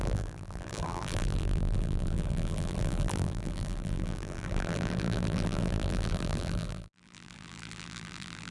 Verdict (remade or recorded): remade